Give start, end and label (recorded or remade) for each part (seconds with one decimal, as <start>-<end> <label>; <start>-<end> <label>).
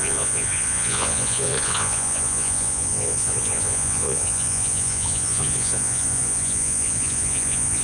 0.0-7.8 remade